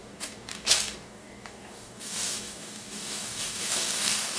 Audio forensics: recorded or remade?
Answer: remade